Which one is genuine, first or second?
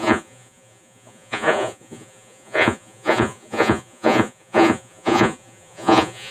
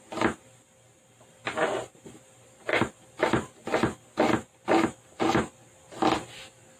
second